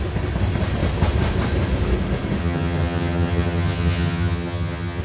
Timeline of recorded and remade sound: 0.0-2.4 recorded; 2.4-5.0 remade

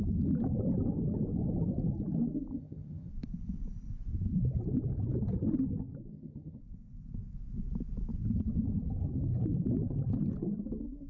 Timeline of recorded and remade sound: 0.0-2.5 recorded; 2.5-3.1 remade; 3.1-6.1 recorded; 6.1-6.6 remade; 6.6-11.1 recorded

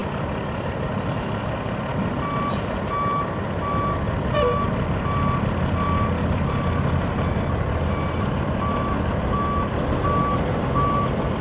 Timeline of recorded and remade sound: 0.0-11.4 recorded

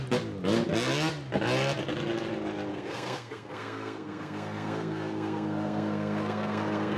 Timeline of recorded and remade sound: 0.0-2.7 recorded; 2.7-7.0 remade

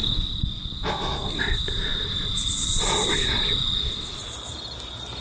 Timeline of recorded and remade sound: 0.0-5.2 recorded

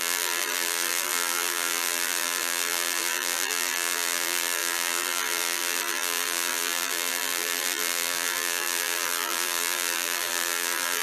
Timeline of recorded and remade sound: 0.0-11.0 remade

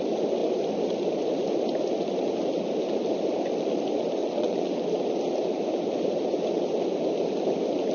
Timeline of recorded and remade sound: 0.0-4.2 recorded; 4.2-4.8 remade; 4.8-7.9 recorded

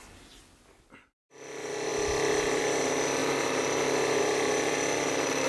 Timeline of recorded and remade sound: 0.0-5.5 recorded